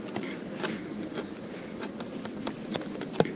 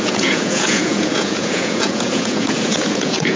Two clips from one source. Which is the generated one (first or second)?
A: second